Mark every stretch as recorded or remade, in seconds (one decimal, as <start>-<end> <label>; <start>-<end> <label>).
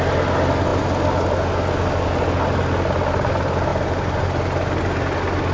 0.0-5.5 recorded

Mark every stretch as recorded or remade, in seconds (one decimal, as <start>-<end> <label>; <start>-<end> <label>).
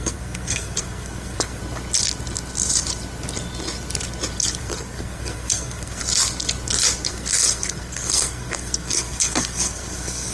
0.0-1.6 remade; 1.6-4.6 recorded; 4.6-6.0 remade; 6.0-7.1 recorded; 7.1-10.3 remade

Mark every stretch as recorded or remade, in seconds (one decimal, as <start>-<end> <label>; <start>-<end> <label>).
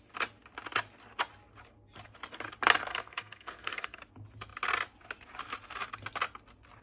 0.0-2.9 recorded; 2.9-4.0 remade; 4.0-6.8 recorded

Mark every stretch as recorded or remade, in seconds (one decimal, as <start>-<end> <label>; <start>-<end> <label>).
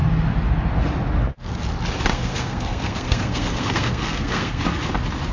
0.0-2.1 recorded; 2.1-4.6 remade; 4.6-5.3 recorded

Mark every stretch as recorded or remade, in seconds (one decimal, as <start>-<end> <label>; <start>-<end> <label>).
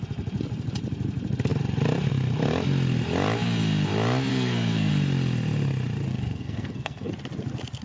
0.0-4.3 recorded; 4.3-4.9 remade; 4.9-6.1 recorded; 6.1-7.1 remade; 7.1-7.8 recorded